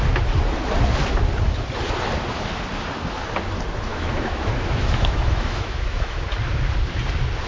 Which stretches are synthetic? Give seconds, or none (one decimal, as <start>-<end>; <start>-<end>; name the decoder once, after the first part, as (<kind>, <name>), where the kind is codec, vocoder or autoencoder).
3.9-6.2 (autoencoder, DAC-VAE)